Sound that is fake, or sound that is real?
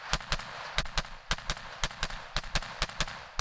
real